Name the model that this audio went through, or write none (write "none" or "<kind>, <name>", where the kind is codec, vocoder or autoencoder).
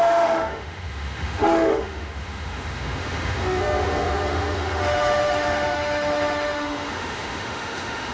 autoencoder, DAC-VAE